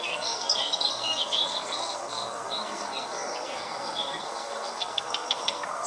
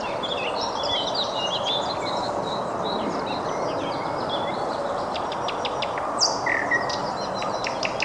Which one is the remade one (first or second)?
first